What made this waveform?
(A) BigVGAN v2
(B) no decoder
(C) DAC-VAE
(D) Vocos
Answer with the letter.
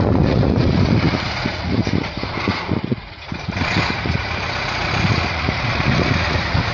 D